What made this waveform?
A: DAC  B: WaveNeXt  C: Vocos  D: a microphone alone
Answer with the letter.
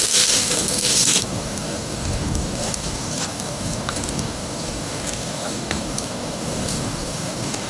A